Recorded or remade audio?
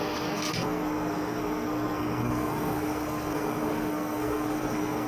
remade